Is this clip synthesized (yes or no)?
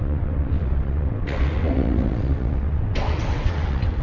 yes